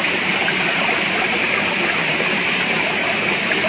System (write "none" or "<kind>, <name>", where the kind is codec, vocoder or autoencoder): none